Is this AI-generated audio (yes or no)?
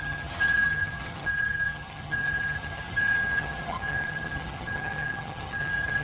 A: yes